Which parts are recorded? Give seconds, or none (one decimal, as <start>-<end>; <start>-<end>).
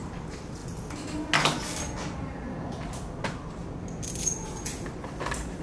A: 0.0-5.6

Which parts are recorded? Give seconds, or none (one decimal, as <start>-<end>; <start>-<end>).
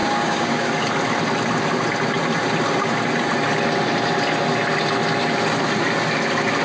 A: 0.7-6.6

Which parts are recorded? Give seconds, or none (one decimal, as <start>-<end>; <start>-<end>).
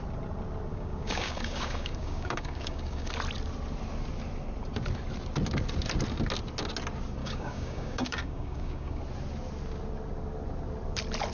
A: 0.0-0.7; 3.1-7.2; 9.0-11.3